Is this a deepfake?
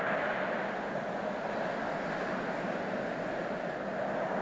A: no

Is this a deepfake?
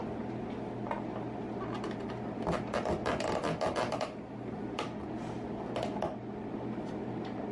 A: no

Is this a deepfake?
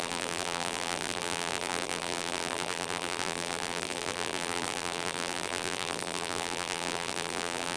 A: yes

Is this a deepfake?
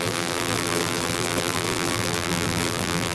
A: yes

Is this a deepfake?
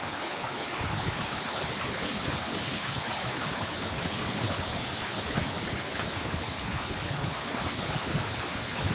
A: yes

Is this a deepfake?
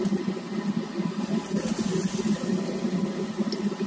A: no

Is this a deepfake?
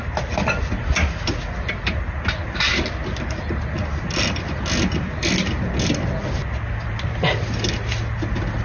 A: no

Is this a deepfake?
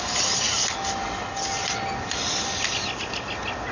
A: no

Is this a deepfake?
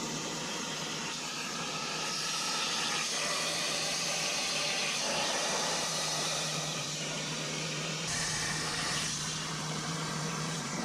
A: yes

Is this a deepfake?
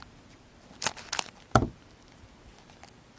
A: no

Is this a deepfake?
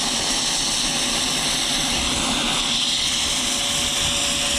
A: no